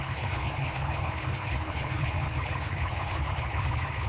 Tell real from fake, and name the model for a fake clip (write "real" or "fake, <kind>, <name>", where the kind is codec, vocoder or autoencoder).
fake, codec, HILCodec